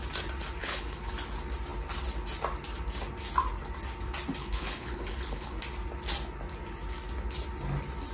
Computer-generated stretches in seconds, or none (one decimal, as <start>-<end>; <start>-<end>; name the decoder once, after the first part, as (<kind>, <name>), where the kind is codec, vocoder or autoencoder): 0.6-1.1 (codec, HILCodec); 4.4-5.6